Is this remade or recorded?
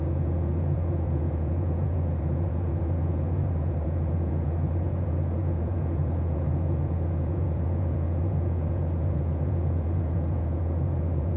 remade